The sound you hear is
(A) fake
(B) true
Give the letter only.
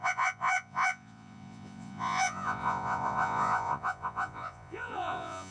A